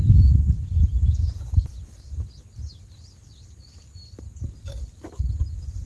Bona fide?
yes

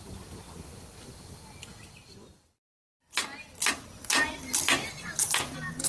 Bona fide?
yes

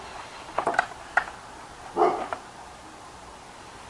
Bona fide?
yes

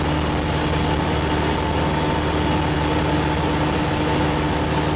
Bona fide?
yes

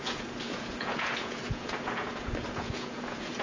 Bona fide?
no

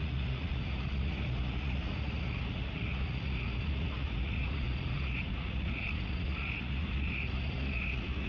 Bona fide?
no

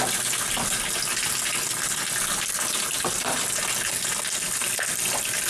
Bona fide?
yes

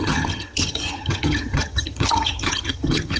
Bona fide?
no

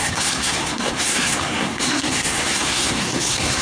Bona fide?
no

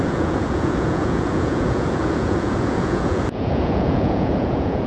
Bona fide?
no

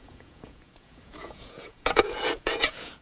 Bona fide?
no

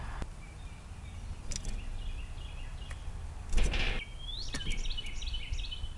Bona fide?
yes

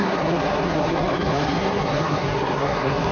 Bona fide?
no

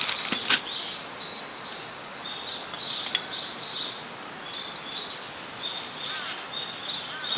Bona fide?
yes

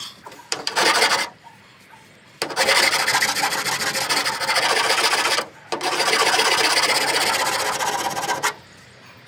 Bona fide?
yes